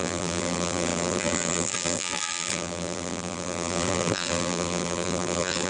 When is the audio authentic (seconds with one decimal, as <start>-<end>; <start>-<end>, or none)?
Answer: none